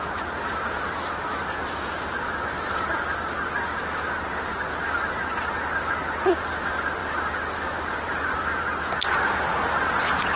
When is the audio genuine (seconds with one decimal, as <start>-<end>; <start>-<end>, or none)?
0.0-10.4